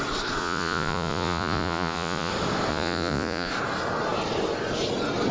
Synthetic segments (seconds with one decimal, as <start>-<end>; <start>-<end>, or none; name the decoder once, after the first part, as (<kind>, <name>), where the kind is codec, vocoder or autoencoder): 0.4-2.3 (vocoder, Vocos); 2.7-3.5